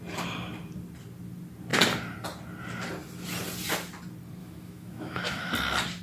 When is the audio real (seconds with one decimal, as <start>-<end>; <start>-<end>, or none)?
0.0-4.4; 5.5-6.0